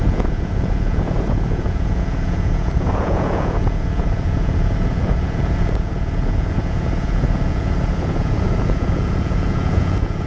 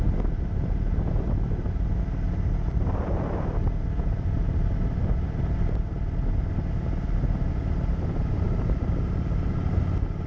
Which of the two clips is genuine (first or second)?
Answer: second